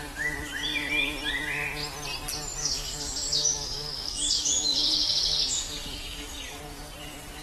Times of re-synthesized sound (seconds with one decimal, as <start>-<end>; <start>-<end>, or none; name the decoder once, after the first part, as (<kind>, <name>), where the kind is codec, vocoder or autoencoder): 2.6-6.6 (codec, DAC)